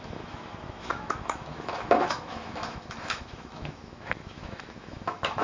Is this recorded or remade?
remade